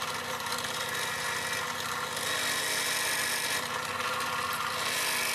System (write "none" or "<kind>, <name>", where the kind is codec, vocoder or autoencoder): none